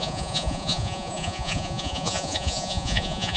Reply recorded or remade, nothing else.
remade